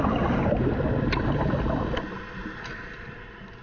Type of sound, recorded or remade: recorded